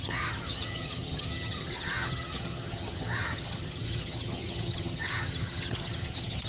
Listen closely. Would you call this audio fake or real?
fake